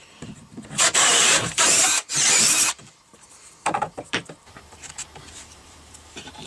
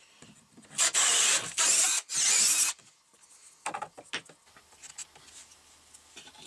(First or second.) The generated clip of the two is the first